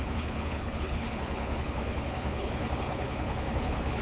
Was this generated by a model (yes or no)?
yes